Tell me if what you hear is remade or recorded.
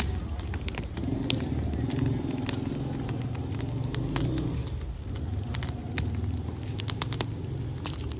recorded